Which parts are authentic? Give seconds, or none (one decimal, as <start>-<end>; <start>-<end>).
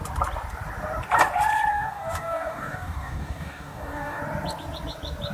0.0-1.7; 4.2-5.3